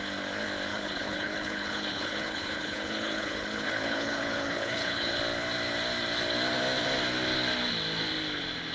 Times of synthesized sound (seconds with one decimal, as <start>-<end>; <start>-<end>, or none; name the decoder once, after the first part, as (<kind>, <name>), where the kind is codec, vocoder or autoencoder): 0.7-5.2 (codec, HILCodec)